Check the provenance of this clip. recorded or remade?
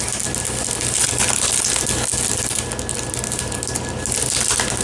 recorded